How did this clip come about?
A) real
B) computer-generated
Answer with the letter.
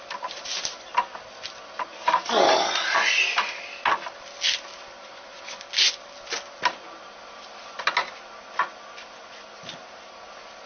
A